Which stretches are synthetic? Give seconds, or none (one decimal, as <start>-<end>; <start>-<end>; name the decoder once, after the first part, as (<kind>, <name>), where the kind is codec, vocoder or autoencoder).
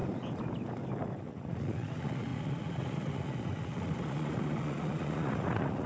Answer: 1.2-5.9 (vocoder, Vocos)